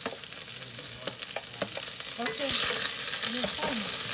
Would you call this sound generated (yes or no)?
no